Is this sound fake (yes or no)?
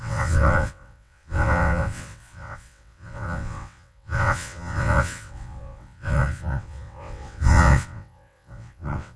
yes